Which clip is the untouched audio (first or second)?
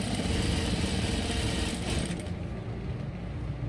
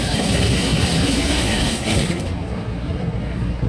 first